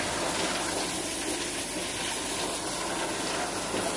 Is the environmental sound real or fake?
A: real